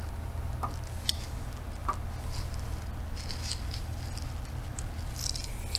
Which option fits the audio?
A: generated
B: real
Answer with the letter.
B